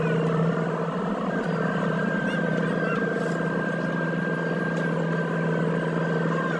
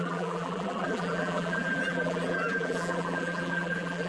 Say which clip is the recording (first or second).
first